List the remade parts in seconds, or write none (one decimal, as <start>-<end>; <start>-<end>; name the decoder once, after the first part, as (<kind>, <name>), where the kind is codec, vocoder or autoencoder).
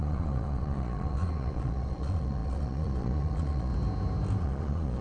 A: 0.0-3.7 (vocoder, Vocos); 4.4-5.0